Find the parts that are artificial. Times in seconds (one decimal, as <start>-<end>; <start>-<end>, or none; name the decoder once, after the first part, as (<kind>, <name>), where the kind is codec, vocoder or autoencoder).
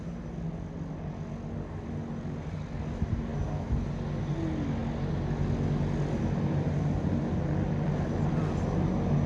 none